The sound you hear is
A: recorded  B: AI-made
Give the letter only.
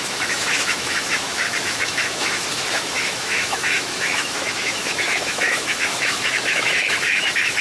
B